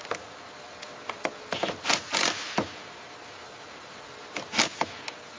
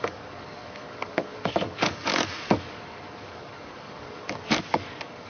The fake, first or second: second